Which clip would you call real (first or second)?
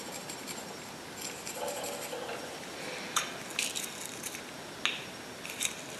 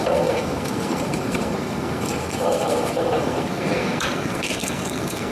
first